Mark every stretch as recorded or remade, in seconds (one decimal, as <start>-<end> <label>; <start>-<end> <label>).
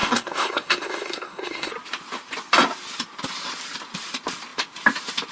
0.0-1.7 remade; 1.7-5.3 recorded